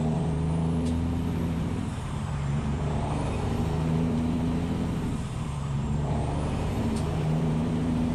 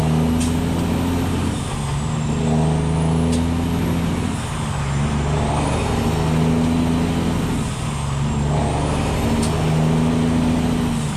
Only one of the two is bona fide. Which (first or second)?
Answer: second